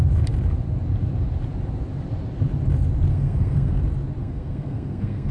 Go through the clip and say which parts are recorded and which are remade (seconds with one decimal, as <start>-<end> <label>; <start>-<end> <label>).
0.0-3.1 recorded; 3.1-3.8 remade; 3.8-4.2 recorded; 4.2-5.3 remade